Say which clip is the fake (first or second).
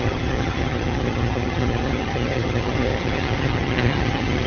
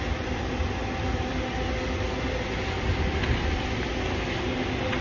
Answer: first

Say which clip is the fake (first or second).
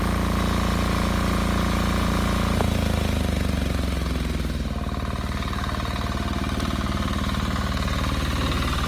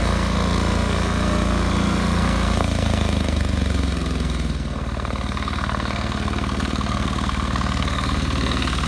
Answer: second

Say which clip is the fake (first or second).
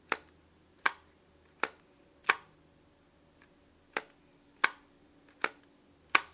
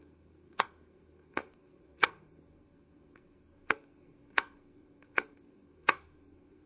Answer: second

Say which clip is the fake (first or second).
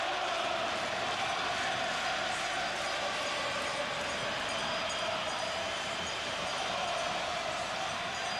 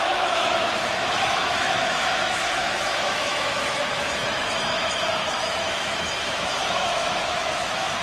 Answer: second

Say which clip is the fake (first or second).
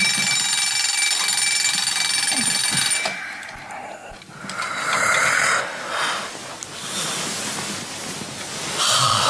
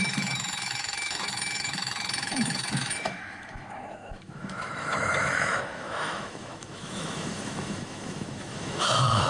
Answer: second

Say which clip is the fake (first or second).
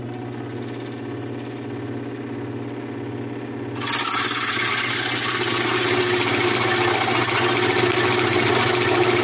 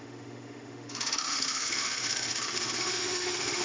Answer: second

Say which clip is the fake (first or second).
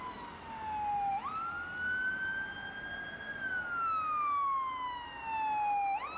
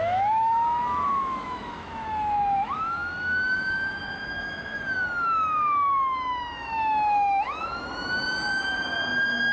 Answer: second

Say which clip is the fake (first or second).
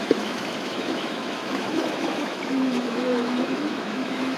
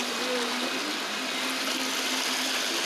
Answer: first